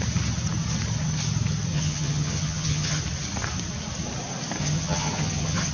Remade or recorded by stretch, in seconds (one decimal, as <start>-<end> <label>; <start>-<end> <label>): 0.0-1.7 recorded; 1.7-3.0 remade; 3.0-4.6 recorded; 4.6-5.7 remade